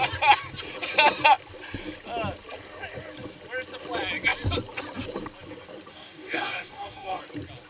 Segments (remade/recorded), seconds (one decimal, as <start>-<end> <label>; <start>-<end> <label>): 0.0-5.9 recorded; 5.9-7.2 remade; 7.2-7.7 recorded